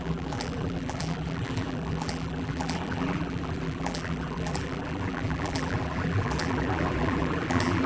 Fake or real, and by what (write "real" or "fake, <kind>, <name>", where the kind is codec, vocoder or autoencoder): fake, vocoder, BigVGAN v2